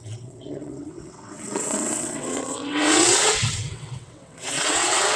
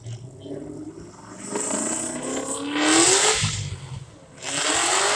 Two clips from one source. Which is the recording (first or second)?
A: second